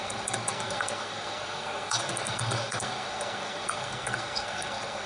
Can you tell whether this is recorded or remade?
remade